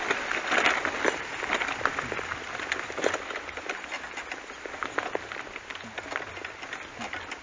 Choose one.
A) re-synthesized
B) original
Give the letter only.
B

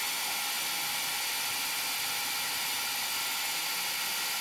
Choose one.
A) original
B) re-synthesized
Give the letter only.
A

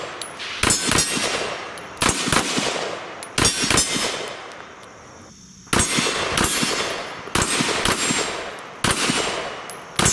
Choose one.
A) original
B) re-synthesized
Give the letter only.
A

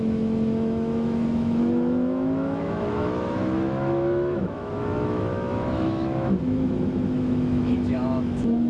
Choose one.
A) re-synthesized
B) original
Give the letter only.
A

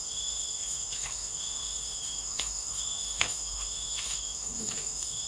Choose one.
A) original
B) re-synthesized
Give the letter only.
B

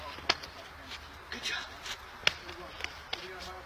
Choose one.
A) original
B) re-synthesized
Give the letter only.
A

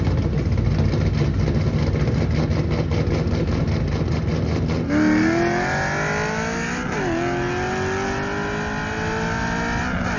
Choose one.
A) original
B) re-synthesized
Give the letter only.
A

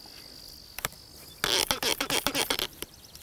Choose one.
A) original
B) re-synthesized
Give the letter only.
A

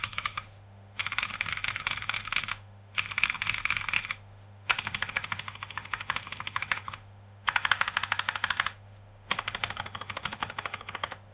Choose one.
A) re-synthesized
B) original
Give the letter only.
A